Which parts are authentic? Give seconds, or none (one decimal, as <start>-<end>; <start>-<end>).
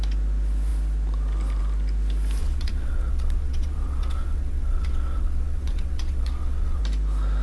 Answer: 0.0-2.4; 6.8-7.4